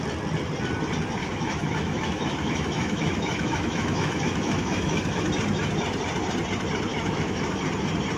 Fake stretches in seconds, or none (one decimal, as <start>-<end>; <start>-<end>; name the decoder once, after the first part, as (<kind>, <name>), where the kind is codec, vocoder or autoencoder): 1.2-5.2 (autoencoder, DAC-VAE); 6.9-7.6